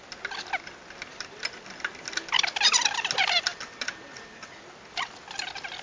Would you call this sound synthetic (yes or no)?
no